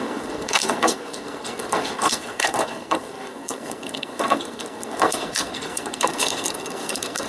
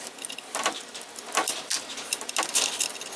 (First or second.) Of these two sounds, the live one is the second